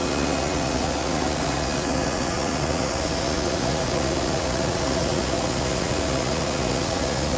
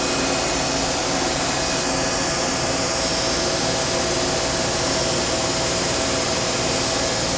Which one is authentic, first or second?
second